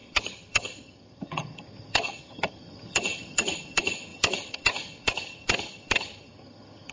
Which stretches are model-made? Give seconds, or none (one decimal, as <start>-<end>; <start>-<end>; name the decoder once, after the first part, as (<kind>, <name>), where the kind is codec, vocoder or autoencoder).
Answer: 0.0-6.9 (vocoder, HiFi-GAN)